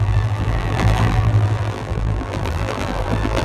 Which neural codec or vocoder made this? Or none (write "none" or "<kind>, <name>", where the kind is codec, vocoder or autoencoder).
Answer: vocoder, BigVGAN v2